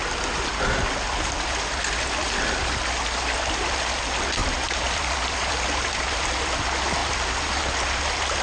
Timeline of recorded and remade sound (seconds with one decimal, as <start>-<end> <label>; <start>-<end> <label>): 0.0-4.4 recorded; 4.4-6.2 remade; 6.2-7.0 recorded; 7.0-7.6 remade; 7.6-8.4 recorded